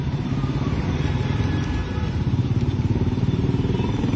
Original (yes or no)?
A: no